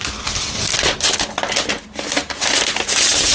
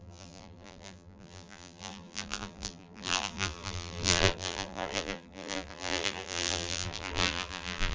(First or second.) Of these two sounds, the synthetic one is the second